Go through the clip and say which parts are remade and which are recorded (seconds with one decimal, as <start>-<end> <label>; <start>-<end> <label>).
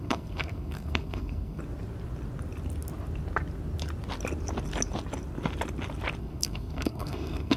0.0-1.6 remade; 1.6-6.2 recorded; 6.2-7.6 remade